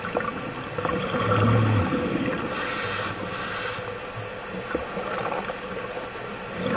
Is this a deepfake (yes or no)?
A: no